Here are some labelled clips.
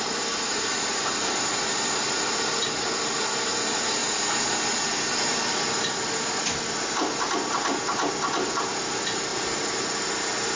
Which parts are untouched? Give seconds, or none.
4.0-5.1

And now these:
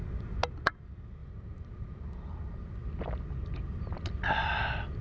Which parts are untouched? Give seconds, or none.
0.0-1.2; 2.2-5.0

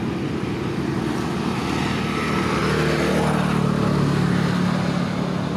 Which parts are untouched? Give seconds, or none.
0.0-5.6